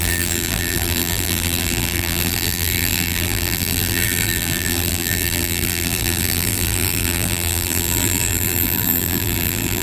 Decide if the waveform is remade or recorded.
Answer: remade